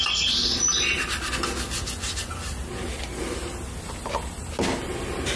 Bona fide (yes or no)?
yes